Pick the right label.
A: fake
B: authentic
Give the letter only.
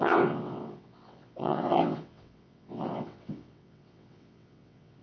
A